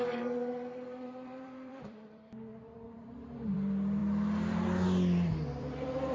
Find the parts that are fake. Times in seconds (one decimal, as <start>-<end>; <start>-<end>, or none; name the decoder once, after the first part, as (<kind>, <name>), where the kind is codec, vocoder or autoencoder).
0.0-4.0 (vocoder, BigVGAN v2); 5.6-6.1